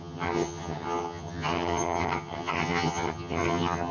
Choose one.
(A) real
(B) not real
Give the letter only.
B